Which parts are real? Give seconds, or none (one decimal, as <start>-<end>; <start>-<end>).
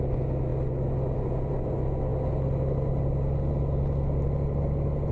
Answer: 0.0-5.1